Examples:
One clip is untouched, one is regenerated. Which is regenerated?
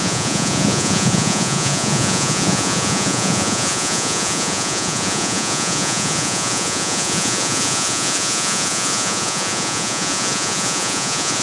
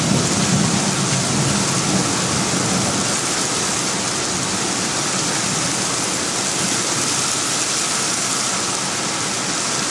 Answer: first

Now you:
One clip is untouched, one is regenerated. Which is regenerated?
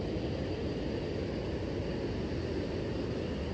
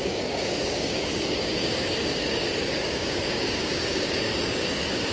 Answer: second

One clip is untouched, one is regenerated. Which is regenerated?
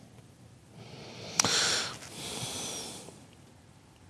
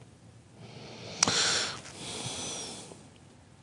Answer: first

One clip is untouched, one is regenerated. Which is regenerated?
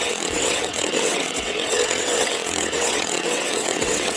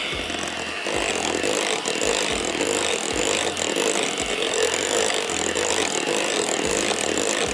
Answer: first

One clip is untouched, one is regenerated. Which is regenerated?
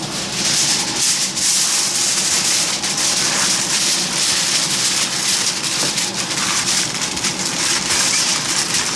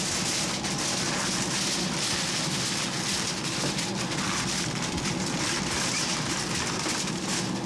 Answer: first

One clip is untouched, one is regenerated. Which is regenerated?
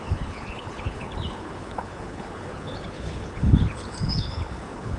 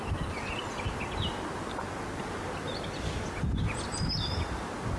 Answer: first